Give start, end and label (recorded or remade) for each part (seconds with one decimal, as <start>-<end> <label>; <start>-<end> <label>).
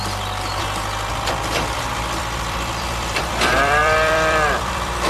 0.0-0.5 remade; 0.5-1.1 recorded; 1.1-5.1 remade